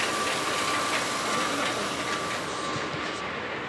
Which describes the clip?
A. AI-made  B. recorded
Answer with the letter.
B